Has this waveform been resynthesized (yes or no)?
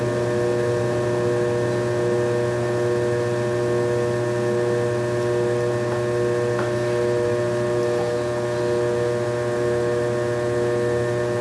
no